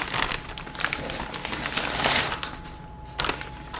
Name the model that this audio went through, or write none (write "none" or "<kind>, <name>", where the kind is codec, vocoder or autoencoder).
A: none